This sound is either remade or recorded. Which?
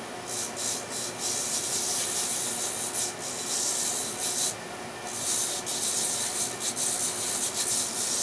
recorded